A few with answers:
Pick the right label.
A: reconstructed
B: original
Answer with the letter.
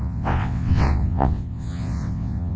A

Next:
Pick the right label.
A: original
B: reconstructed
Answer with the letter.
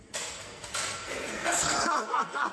B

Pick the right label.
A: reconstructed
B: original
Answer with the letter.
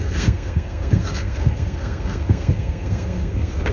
A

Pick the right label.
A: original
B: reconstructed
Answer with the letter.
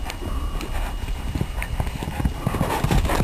B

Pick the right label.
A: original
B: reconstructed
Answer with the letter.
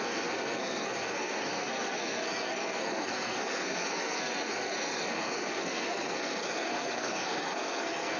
B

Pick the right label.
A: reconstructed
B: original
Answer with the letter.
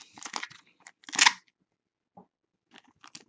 B